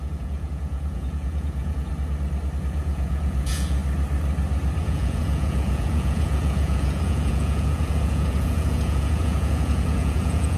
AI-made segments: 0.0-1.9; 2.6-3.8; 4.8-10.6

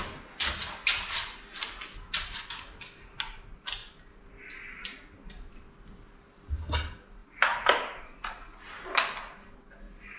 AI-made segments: none

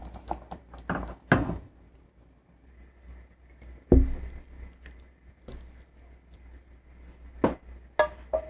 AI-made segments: none